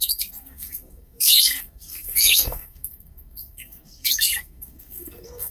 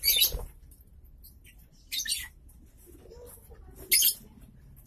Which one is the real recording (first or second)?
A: second